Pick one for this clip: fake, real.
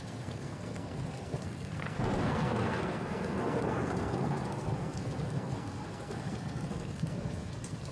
fake